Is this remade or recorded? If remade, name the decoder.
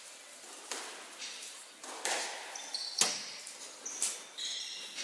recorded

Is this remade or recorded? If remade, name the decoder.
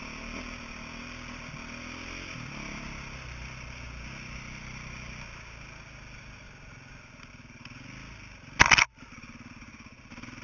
recorded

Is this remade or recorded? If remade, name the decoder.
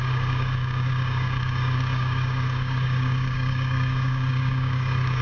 remade, codec, DAC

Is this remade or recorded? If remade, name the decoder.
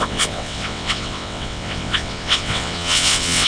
remade, vocoder, WaveNeXt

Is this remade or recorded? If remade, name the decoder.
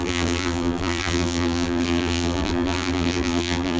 remade, vocoder, BigVGAN v2